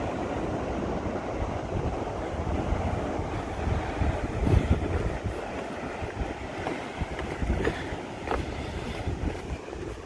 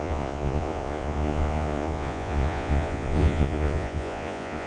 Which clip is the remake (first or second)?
second